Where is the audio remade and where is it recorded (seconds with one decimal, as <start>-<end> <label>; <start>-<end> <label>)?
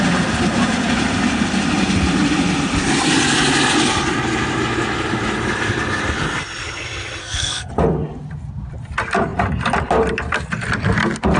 0.0-7.2 recorded; 7.2-7.7 remade; 7.7-11.4 recorded